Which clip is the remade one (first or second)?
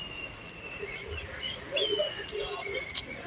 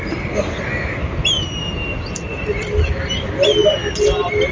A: first